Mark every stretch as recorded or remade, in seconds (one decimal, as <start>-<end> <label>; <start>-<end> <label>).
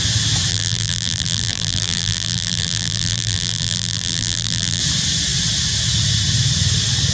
0.0-0.5 recorded; 0.5-4.8 remade; 4.8-7.1 recorded